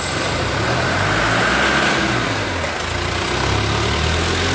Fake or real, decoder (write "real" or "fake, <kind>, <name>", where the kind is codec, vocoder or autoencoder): real